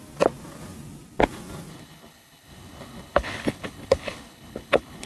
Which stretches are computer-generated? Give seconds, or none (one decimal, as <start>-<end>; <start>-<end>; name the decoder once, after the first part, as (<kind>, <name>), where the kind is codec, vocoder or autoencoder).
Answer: 1.7-5.1 (codec, HILCodec)